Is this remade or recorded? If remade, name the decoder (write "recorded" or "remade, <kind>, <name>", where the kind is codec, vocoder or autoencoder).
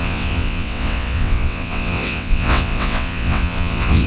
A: remade, vocoder, WaveNeXt